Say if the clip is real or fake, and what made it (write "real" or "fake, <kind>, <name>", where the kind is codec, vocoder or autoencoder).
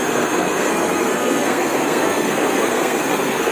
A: fake, codec, SNAC